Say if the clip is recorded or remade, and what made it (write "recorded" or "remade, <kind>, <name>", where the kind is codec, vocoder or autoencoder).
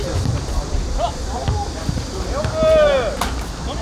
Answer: recorded